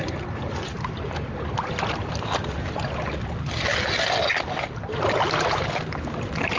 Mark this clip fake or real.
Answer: real